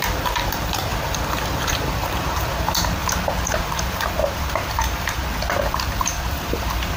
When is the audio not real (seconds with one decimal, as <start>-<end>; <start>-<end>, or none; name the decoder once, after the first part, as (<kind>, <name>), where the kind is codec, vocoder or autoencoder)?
0.0-3.0 (vocoder, BigVGAN v2); 3.6-5.2; 6.0-7.0